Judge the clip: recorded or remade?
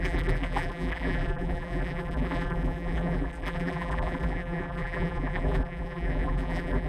remade